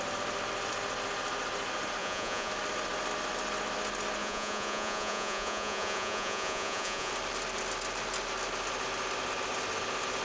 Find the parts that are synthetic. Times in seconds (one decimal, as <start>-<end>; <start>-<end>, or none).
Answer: 2.0-2.5; 4.2-7.1